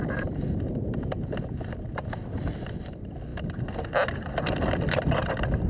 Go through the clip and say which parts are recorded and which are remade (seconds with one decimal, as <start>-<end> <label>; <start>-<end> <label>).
0.0-5.7 recorded